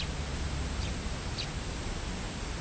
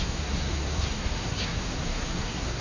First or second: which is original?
first